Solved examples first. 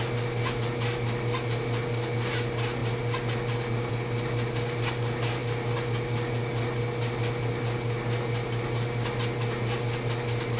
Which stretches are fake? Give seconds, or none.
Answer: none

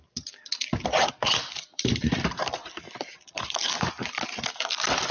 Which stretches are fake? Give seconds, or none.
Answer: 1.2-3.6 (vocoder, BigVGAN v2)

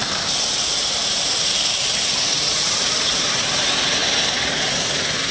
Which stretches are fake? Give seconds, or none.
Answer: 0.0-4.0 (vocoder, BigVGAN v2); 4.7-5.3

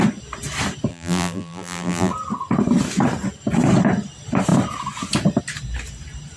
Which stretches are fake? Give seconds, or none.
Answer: 0.9-2.1 (vocoder, BigVGAN v2)